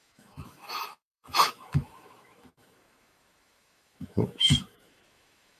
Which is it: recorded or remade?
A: remade